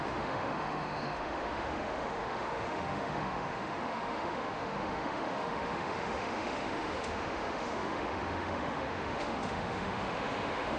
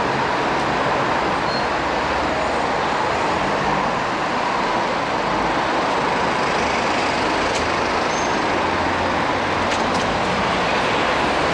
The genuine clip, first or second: second